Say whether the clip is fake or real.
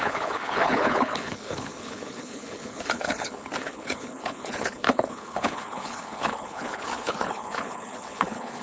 fake